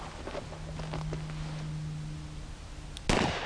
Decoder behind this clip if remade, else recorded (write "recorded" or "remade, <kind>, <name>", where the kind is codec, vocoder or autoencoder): recorded